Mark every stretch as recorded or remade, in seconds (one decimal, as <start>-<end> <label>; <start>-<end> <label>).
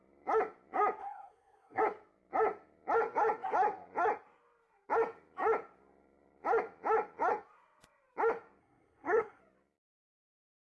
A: 0.0-1.0 recorded; 1.0-1.8 remade; 1.8-8.6 recorded; 8.6-9.4 remade; 9.4-10.7 recorded